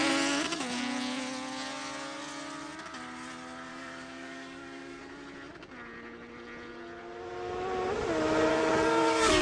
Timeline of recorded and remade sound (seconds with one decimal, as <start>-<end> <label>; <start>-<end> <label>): 0.0-3.7 recorded; 3.7-5.0 remade; 5.0-8.5 recorded; 8.5-9.4 remade